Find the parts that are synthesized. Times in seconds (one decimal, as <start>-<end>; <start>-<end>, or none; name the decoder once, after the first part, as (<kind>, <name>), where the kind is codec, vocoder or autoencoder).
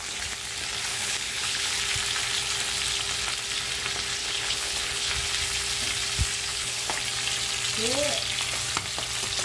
0.9-1.7 (codec, HILCodec); 4.2-5.1; 6.5-7.0